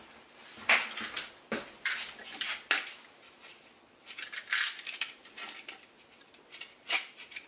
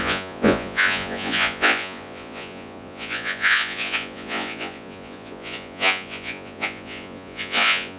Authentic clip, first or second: first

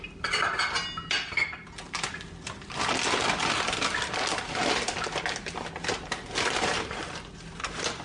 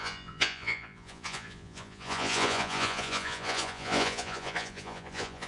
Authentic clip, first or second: first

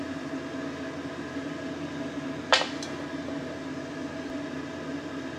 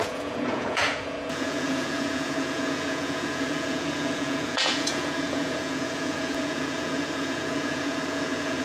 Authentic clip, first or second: first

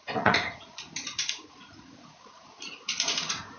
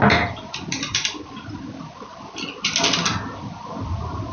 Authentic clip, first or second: second